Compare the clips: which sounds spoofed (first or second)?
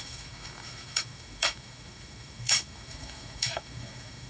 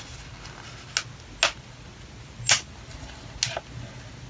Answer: first